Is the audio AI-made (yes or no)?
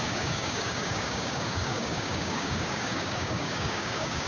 yes